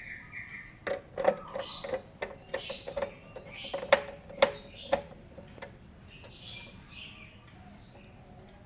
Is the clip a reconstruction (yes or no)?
no